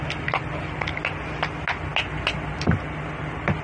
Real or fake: real